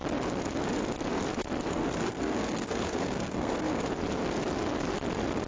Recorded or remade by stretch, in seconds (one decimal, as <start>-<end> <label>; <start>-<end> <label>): 0.0-1.7 recorded; 1.7-3.8 remade; 3.8-5.5 recorded